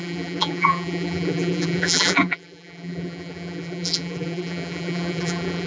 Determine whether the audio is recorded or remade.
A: remade